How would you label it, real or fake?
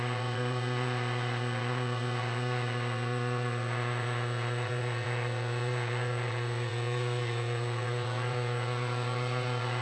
fake